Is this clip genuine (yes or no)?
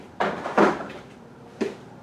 no